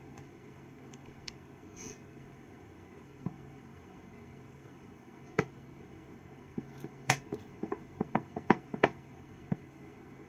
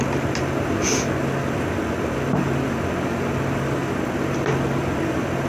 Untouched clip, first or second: second